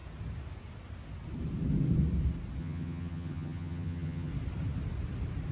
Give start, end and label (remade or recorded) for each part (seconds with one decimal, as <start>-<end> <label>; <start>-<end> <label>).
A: 0.0-2.6 recorded; 2.6-4.3 remade; 4.3-5.5 recorded